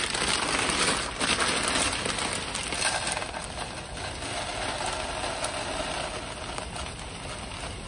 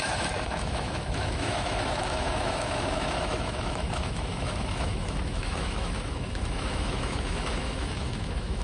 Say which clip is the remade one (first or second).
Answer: second